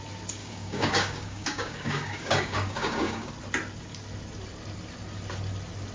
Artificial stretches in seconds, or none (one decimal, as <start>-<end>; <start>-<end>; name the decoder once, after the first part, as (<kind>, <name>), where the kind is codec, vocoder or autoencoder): 0.4-3.3 (codec, DAC)